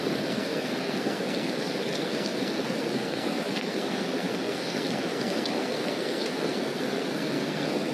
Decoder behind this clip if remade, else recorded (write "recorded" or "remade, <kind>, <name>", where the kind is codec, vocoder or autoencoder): remade, codec, SNAC